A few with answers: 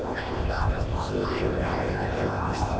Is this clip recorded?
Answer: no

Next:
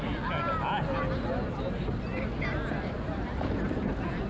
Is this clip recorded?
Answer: yes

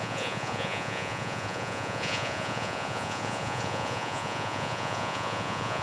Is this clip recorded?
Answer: no